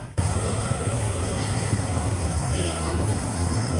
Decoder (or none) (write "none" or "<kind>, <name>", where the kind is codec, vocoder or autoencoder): codec, SNAC